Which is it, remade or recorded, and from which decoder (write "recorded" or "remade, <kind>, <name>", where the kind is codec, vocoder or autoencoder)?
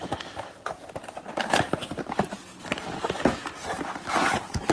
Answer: recorded